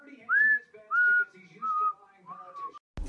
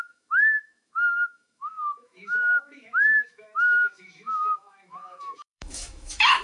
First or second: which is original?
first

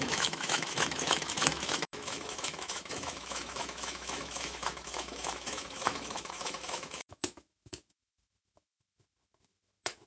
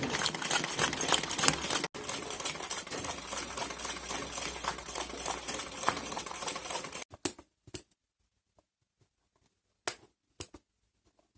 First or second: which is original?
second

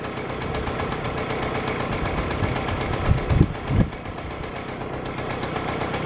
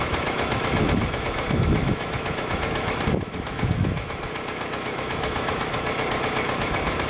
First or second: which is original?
first